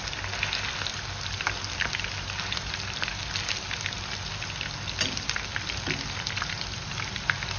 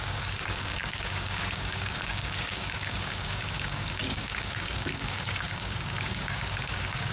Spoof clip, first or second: second